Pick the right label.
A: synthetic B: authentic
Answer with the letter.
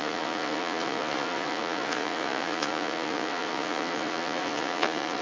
A